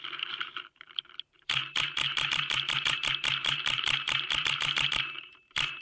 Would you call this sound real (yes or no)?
no